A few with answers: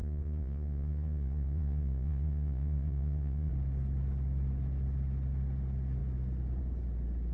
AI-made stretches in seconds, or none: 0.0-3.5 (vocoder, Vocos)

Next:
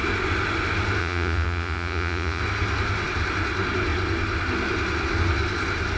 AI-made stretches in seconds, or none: 1.0-2.4 (vocoder, Vocos)

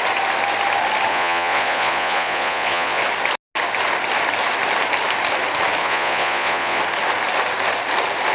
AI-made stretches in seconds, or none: 1.1-3.0 (vocoder, Vocos); 5.8-6.8

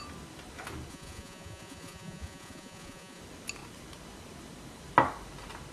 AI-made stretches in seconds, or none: 0.9-3.2 (vocoder, Vocos)

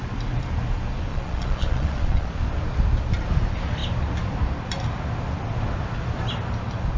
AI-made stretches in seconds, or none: 1.1-2.3 (vocoder, Vocos)

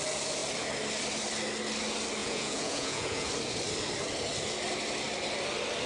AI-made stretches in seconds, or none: 2.2-3.3 (vocoder, Vocos)

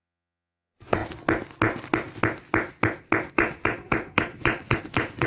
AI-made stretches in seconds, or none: 0.0-1.0 (vocoder, Vocos); 3.3-5.3

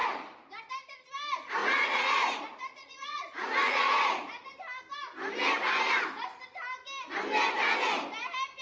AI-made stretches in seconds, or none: 1.6-4.4 (vocoder, Vocos)